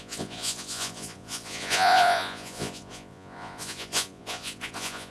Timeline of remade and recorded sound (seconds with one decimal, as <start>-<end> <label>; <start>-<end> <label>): 0.0-5.1 remade

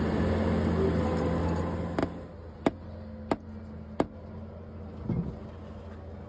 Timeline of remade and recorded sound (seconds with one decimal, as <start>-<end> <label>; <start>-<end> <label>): 0.0-6.3 recorded

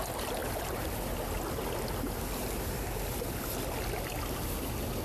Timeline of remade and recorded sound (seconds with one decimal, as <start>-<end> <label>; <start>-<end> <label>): 0.0-5.0 recorded

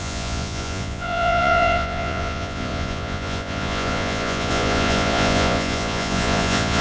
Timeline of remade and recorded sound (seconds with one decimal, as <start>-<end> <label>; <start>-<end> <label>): 0.0-6.8 remade